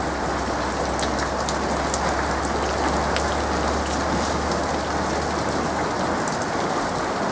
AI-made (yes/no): no